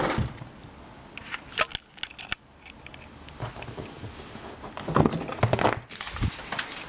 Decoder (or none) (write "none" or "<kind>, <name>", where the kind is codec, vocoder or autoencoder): none